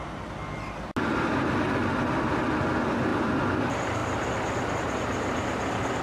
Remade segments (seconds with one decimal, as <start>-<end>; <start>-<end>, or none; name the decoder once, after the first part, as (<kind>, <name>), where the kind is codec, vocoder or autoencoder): none